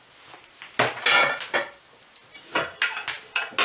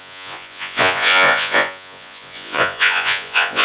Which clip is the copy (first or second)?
second